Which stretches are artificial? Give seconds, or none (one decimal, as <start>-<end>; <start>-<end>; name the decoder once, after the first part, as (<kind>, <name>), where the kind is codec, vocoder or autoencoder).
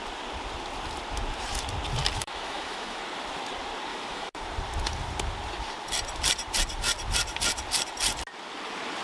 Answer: 2.2-3.0 (autoencoder, DAC-VAE); 3.9-4.4